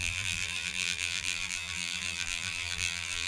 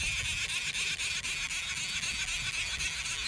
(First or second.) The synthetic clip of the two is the first